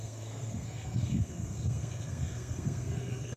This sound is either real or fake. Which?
fake